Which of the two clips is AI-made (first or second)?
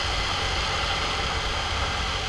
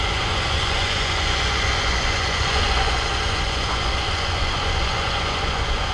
second